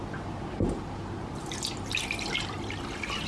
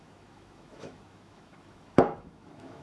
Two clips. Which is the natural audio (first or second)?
first